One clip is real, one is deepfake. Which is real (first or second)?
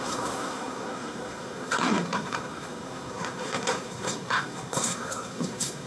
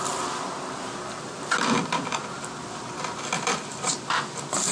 second